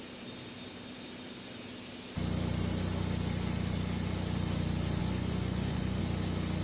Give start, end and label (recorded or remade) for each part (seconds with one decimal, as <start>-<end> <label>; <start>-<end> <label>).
0.0-5.0 recorded; 5.0-6.0 remade; 6.0-6.6 recorded